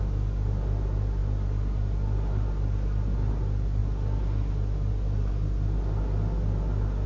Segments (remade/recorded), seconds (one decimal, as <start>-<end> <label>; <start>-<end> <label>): 0.0-7.1 recorded